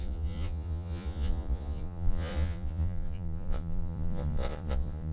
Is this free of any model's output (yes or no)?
no